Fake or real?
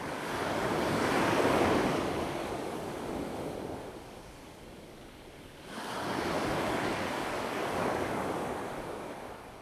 fake